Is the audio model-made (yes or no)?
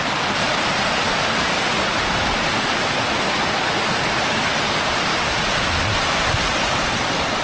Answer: no